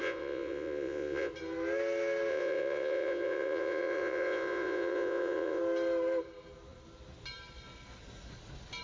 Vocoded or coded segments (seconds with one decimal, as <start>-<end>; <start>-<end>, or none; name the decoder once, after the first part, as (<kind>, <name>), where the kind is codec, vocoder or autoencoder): 0.0-1.3 (vocoder, Vocos); 2.3-5.6

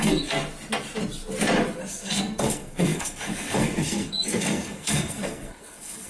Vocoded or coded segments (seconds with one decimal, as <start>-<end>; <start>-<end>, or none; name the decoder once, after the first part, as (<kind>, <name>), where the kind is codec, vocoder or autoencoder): 0.0-0.4 (codec, SNAC); 1.9-6.1

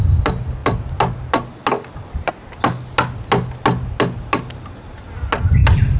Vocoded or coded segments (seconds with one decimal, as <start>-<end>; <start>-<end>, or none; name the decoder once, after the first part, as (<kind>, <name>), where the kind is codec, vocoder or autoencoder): none

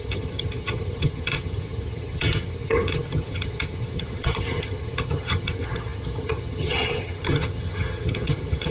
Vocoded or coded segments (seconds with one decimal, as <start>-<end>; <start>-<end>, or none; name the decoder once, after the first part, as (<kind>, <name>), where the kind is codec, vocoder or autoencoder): 0.0-8.7 (vocoder, HiFi-GAN)

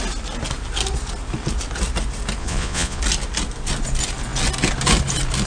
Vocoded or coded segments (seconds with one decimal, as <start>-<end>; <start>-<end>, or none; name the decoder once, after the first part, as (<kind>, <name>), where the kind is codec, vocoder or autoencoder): 2.4-3.0 (vocoder, Vocos)